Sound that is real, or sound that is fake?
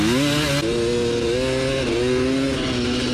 real